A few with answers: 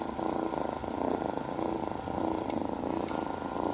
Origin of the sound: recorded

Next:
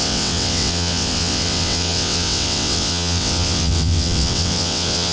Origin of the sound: remade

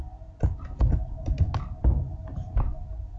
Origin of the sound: recorded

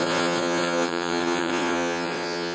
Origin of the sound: remade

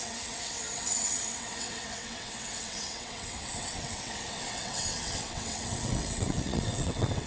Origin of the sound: remade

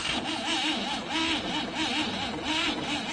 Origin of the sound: recorded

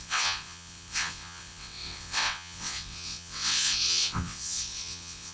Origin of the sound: remade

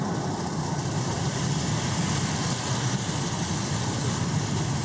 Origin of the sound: recorded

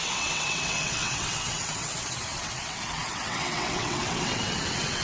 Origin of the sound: remade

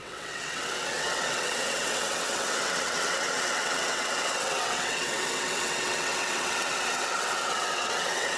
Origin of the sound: remade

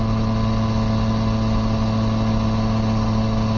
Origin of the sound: recorded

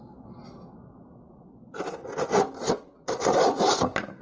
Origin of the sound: recorded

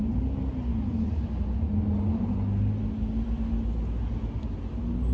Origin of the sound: recorded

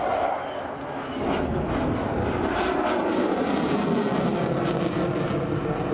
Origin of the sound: recorded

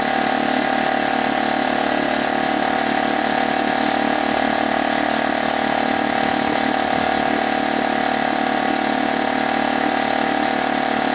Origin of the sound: recorded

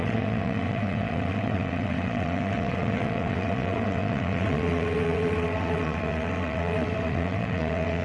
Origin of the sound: remade